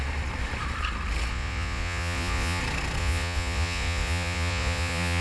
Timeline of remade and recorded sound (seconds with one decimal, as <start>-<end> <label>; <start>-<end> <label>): 0.0-1.3 recorded; 1.3-2.6 remade; 2.6-3.0 recorded; 3.0-5.2 remade